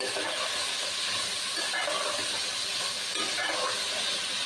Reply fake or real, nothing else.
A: real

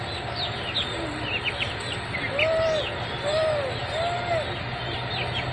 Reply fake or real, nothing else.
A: real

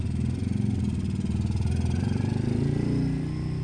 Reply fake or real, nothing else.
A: real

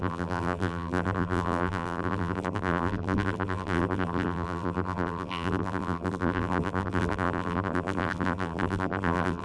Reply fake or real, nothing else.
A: fake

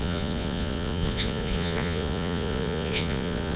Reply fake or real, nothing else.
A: fake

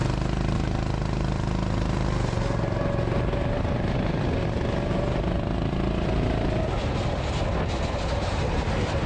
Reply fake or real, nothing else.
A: real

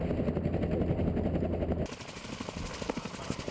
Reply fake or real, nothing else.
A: real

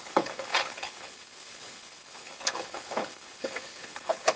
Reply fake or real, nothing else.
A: fake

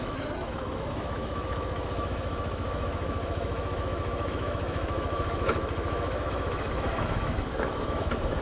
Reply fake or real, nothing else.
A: fake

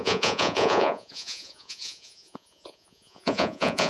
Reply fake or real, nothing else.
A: fake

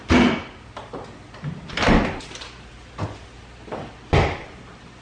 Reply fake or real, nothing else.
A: real